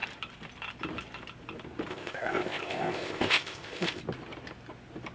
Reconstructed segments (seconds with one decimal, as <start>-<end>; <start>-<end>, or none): 1.9-4.0